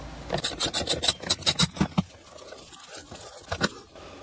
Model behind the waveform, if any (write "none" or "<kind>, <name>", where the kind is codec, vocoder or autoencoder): none